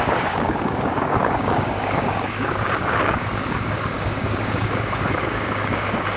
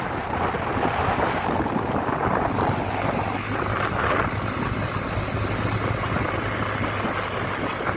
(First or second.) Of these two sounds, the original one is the second